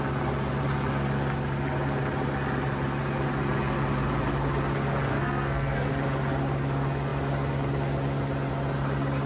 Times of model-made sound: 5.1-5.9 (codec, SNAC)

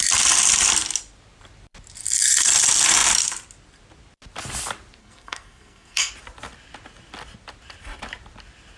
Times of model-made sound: 2.0-2.5 (codec, SNAC); 5.0-6.1

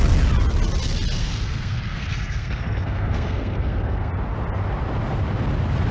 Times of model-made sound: 1.2-4.1 (codec, SNAC)

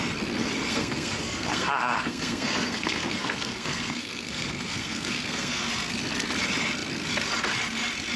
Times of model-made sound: 0.7-5.6 (codec, SNAC)